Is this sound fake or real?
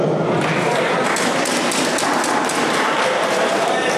fake